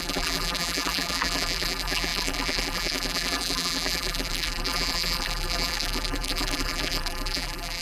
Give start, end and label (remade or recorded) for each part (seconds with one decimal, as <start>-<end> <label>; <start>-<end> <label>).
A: 0.0-7.8 remade